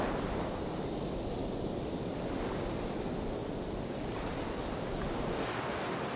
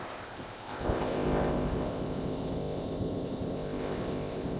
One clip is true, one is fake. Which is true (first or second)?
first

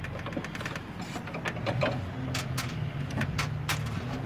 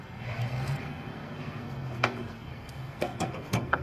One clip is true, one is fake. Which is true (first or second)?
first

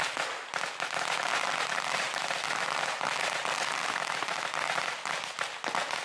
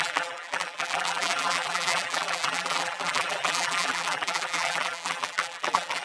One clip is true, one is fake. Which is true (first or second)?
first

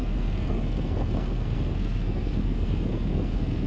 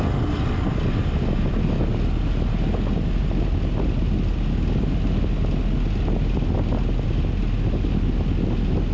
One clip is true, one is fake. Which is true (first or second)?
second